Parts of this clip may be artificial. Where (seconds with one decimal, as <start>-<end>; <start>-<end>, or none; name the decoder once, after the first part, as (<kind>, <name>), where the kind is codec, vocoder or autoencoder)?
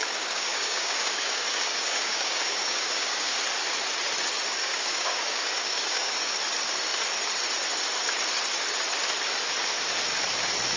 0.0-3.4 (codec, DAC); 4.6-6.3